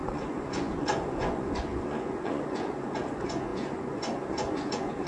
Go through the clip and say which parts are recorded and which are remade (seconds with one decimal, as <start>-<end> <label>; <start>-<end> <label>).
0.0-5.1 remade